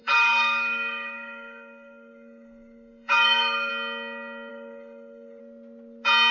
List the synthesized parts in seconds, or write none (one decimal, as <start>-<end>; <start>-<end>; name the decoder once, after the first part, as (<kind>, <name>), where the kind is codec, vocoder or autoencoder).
0.0-3.7 (codec, DAC); 4.5-5.4